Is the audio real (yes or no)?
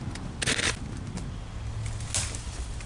yes